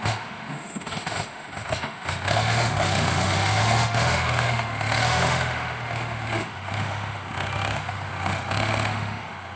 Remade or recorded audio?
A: remade